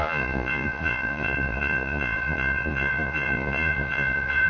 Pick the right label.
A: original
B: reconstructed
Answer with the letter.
B